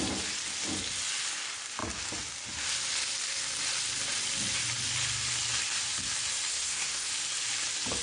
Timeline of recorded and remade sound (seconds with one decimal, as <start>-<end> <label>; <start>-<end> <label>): 0.0-6.5 recorded; 6.5-7.1 remade; 7.1-8.0 recorded